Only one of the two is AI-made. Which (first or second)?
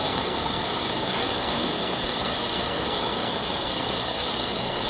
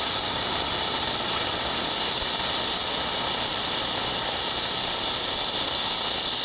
first